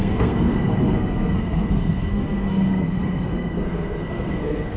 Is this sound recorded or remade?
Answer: remade